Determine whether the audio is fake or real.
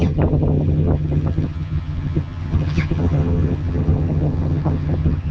fake